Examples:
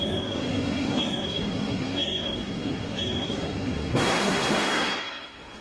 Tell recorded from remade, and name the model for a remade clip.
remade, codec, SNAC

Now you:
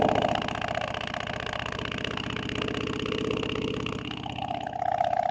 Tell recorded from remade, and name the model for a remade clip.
recorded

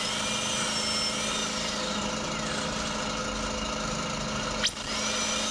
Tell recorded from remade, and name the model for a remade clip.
recorded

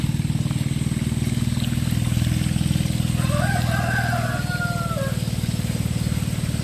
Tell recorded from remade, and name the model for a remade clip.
recorded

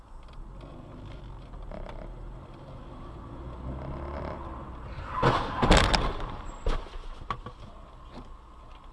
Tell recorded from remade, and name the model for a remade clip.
recorded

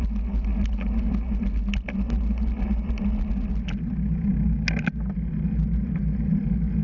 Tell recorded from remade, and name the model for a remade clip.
recorded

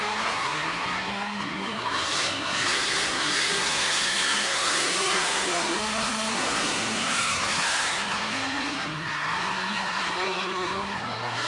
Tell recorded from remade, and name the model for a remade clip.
remade, codec, SNAC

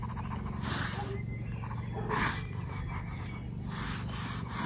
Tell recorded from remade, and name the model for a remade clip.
recorded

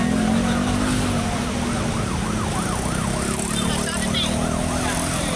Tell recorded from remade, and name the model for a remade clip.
recorded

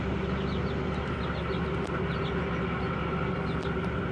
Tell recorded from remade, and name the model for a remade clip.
recorded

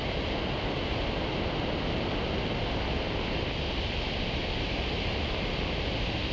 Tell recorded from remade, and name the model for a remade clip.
recorded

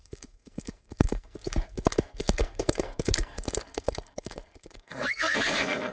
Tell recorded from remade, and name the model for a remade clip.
remade, codec, SNAC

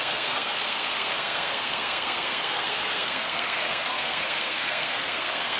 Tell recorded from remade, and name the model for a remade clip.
remade, codec, SNAC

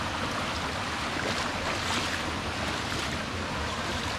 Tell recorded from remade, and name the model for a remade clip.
recorded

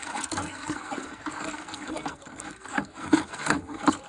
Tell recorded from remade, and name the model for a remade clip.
remade, codec, SNAC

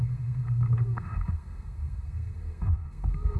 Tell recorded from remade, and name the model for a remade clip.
remade, codec, SNAC